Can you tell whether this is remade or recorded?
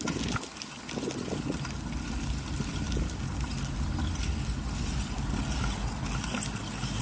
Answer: recorded